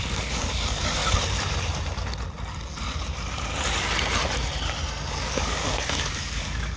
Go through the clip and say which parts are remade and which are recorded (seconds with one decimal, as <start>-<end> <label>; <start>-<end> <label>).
0.0-1.0 remade; 1.0-5.1 recorded; 5.1-6.8 remade